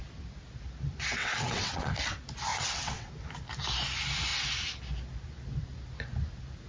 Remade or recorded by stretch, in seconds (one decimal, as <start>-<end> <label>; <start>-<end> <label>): 0.0-1.2 recorded; 1.2-1.9 remade; 1.9-2.5 recorded; 2.5-3.1 remade; 3.1-6.7 recorded

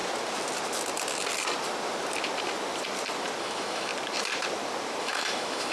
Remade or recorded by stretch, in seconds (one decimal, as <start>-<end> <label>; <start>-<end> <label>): 0.0-3.4 recorded; 3.4-3.9 remade; 3.9-5.0 recorded; 5.0-5.7 remade

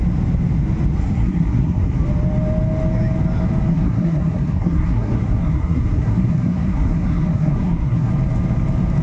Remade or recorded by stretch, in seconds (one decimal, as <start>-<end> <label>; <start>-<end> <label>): 0.0-1.0 recorded; 1.0-2.0 remade; 2.0-3.7 recorded; 3.7-8.1 remade; 8.1-9.0 recorded

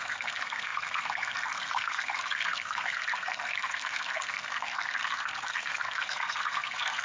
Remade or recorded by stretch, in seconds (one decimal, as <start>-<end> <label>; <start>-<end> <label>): 0.0-7.0 remade

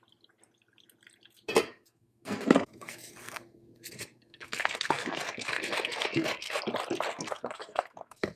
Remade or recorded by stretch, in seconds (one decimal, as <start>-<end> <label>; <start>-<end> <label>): 0.0-1.6 recorded; 1.6-6.6 remade; 6.6-7.1 recorded; 7.1-8.4 remade

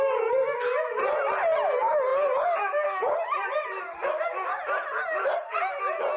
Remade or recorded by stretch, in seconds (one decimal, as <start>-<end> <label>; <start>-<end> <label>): 0.0-6.2 recorded